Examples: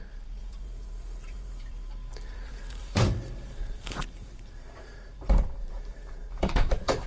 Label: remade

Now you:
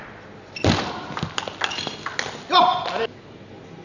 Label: recorded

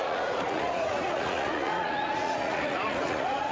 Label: remade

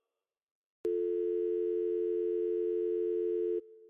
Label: recorded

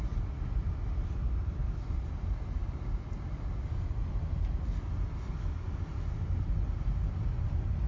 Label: recorded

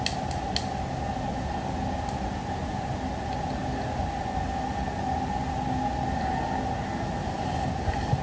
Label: recorded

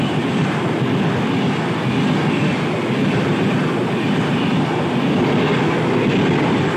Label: recorded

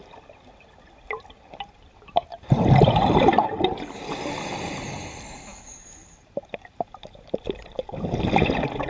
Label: remade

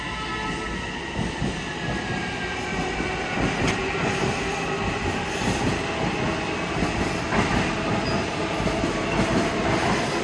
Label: recorded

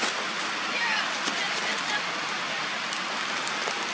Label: recorded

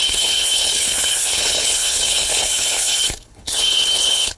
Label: remade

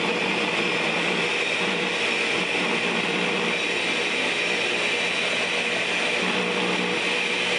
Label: recorded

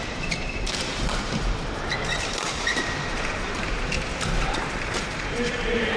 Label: remade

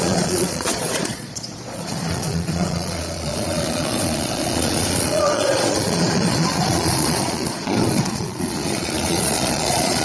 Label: remade